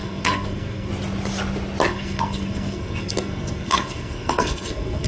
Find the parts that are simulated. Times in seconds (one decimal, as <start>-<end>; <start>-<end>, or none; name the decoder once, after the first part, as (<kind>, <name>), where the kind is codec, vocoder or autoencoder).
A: 0.0-0.9 (codec, SNAC); 1.9-5.1